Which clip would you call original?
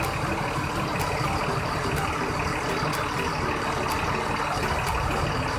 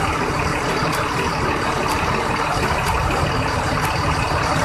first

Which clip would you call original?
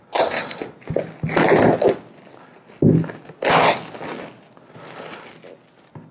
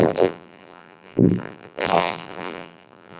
first